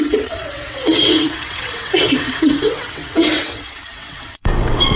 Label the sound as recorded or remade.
remade